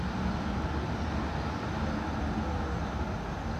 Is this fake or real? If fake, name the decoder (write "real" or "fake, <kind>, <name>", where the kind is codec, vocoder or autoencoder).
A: real